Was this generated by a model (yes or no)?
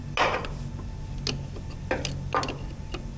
no